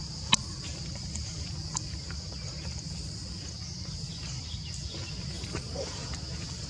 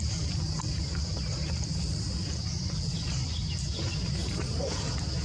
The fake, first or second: second